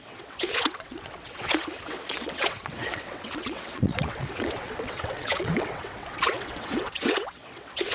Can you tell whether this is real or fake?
fake